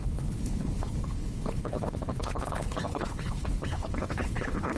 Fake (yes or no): yes